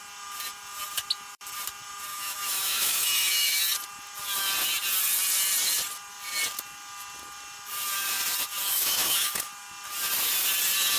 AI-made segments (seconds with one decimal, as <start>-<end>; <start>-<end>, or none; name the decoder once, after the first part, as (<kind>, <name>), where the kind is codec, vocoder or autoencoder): 2.1-3.6 (autoencoder, DAC-VAE); 8.7-9.5